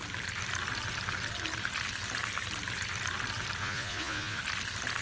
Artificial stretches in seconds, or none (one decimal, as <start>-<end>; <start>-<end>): 3.6-4.4